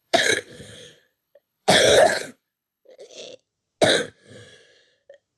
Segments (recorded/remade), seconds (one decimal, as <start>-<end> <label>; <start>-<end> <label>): 0.0-3.2 remade; 3.2-5.4 recorded